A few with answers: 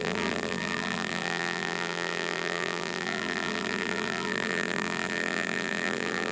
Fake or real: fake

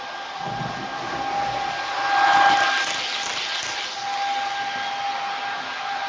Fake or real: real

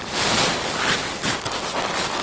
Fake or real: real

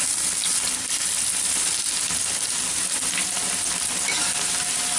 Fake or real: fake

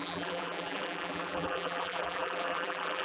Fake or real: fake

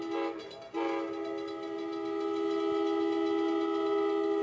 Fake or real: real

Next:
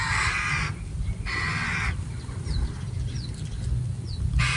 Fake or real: real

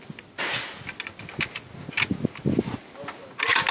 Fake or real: real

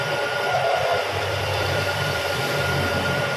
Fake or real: fake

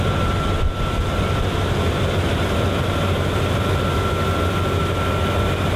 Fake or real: real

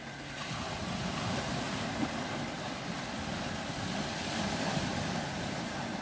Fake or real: real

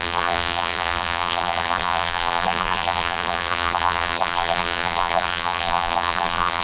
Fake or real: fake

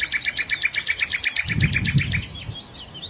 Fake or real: fake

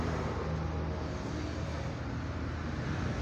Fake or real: real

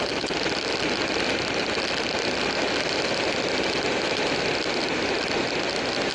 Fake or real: real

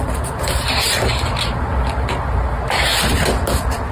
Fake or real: real